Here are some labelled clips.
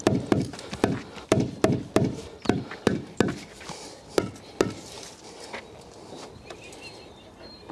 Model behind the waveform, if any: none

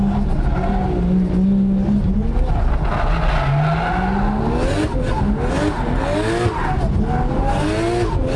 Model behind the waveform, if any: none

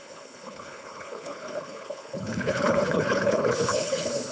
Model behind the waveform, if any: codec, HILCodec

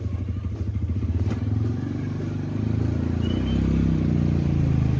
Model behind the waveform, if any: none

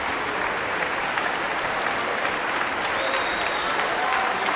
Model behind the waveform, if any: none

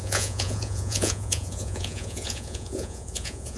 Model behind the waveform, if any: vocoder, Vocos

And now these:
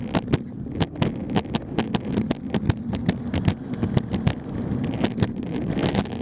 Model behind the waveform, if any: none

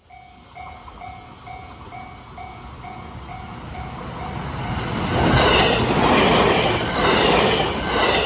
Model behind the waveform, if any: none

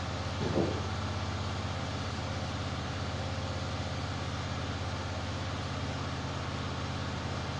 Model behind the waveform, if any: none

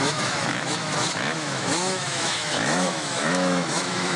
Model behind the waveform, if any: autoencoder, DAC-VAE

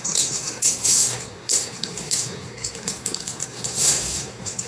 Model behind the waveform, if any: codec, SNAC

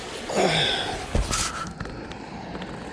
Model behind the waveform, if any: none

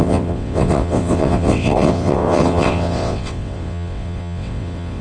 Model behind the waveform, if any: vocoder, WaveNeXt